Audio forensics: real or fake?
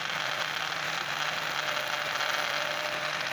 real